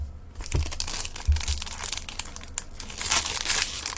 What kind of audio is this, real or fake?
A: real